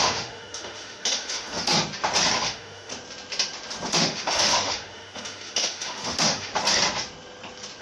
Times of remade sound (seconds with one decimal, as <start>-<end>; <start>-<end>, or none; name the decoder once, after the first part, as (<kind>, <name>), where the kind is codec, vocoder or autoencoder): 0.0-1.7 (autoencoder, DAC-VAE); 2.4-2.9; 3.9-6.5